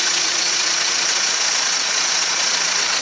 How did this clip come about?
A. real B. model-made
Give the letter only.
B